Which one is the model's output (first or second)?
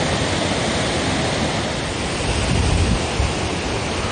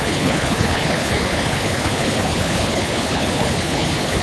second